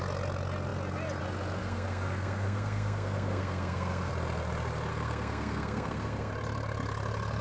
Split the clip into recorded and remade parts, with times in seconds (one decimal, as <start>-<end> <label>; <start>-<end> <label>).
0.0-1.6 recorded; 1.6-4.1 remade; 4.1-4.9 recorded; 4.9-6.3 remade; 6.3-7.4 recorded

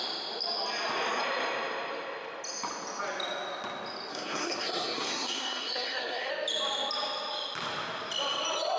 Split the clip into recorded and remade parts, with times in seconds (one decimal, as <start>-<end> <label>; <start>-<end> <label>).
0.0-4.1 recorded; 4.1-6.3 remade; 6.3-8.8 recorded

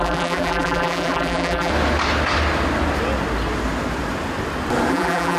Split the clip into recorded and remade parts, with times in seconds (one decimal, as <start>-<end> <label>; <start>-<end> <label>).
0.0-1.7 remade; 1.7-4.9 recorded; 4.9-5.4 remade

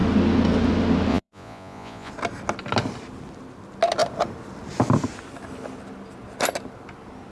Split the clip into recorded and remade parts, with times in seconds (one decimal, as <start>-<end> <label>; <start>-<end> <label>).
0.0-1.1 recorded; 1.1-2.1 remade; 2.1-7.3 recorded